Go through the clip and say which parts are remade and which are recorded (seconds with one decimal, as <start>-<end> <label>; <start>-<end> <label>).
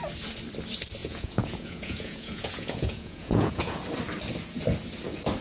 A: 0.0-1.0 recorded; 1.0-3.8 remade; 3.8-5.4 recorded